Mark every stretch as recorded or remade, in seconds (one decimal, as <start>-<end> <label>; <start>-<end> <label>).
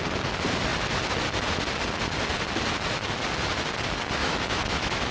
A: 0.0-4.2 recorded; 4.2-5.1 remade